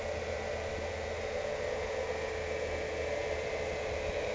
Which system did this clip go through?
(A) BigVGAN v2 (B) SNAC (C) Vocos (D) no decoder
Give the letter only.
D